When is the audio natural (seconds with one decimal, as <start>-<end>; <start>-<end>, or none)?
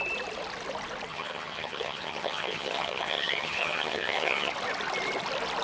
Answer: 0.0-1.1; 4.5-5.6